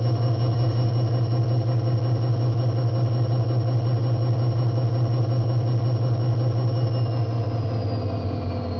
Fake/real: real